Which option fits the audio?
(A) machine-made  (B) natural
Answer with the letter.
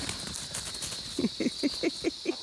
B